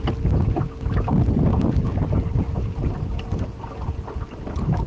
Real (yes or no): yes